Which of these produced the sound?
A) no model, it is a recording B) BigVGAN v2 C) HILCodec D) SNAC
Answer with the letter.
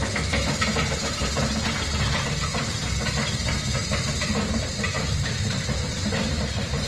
B